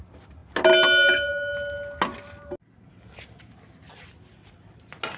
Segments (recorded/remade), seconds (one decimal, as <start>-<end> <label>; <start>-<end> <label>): 0.0-5.2 recorded